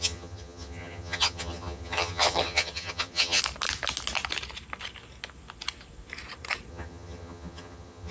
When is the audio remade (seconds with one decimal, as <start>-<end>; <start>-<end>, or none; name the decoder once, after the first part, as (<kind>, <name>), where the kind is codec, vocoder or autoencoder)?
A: 0.0-3.4 (vocoder, HiFi-GAN); 6.7-8.1